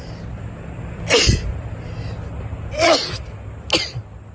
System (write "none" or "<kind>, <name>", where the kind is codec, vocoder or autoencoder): none